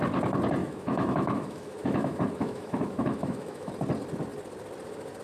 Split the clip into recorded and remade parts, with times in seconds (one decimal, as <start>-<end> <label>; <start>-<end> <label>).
0.0-0.6 recorded; 0.6-3.7 remade; 3.7-5.2 recorded